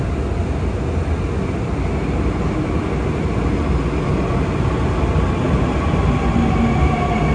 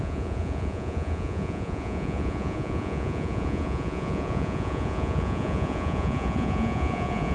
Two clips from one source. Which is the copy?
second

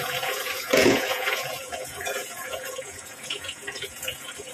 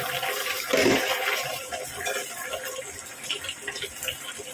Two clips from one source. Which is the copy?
first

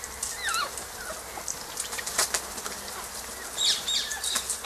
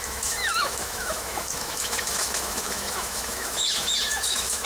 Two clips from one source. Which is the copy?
second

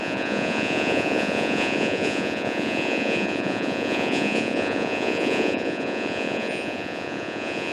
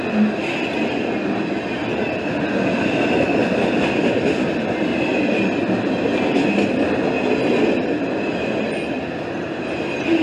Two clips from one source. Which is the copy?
first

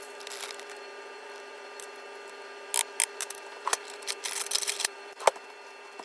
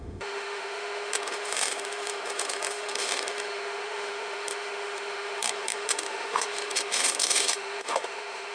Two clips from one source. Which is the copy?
second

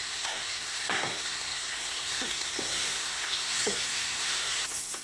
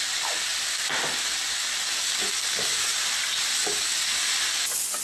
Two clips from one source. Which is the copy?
first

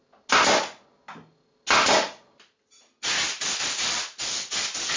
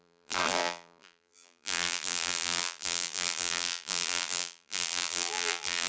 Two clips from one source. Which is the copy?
second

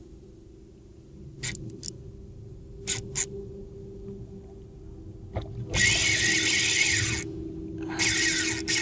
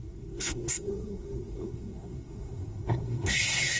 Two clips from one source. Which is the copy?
second